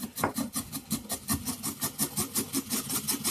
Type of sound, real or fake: real